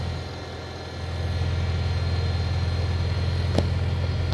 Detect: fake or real real